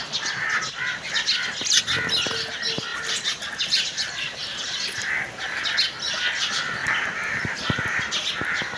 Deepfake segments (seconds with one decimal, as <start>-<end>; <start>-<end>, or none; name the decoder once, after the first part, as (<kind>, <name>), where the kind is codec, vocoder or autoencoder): 2.9-5.1 (vocoder, BigVGAN v2); 6.8-8.0